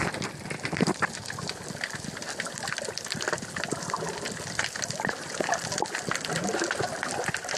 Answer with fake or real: fake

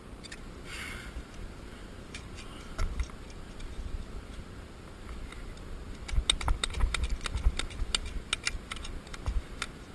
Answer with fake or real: real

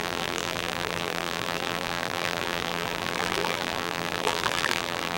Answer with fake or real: fake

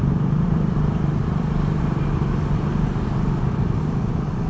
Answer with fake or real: fake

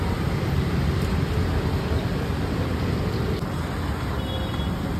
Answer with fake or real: real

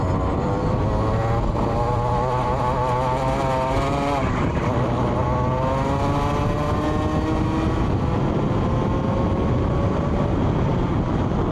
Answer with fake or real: real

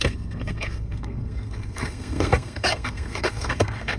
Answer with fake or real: fake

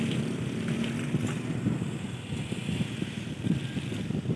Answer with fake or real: real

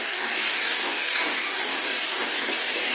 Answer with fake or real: fake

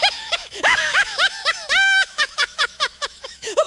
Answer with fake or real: fake